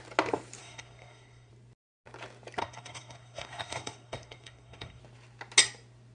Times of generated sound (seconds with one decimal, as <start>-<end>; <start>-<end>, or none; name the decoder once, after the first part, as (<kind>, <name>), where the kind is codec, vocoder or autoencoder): 0.6-1.5 (codec, SNAC); 2.6-5.0